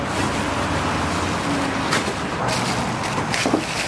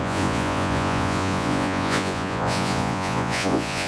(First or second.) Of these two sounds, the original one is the first